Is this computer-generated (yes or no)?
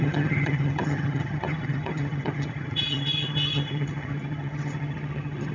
yes